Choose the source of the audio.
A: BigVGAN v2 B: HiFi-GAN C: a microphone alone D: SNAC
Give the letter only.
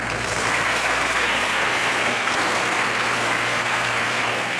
D